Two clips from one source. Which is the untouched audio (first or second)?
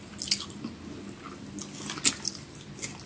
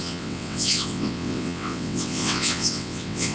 first